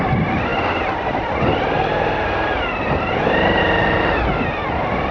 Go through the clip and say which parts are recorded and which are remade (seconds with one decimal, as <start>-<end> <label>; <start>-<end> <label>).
0.0-5.1 recorded